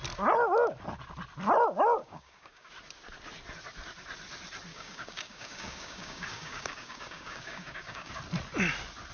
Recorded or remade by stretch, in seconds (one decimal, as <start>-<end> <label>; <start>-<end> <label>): 0.0-2.0 recorded; 2.0-2.7 remade; 2.7-4.7 recorded; 4.7-8.1 remade; 8.1-9.1 recorded